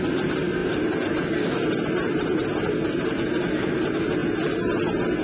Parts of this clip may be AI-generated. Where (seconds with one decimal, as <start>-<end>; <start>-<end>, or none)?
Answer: none